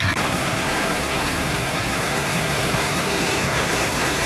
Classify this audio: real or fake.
fake